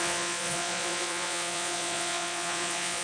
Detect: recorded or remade remade